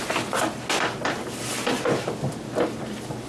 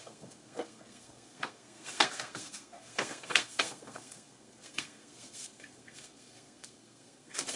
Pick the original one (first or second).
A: first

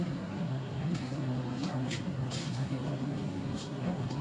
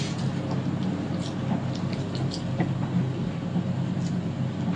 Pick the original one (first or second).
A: second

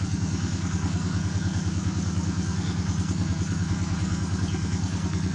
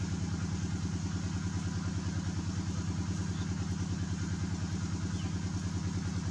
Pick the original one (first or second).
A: second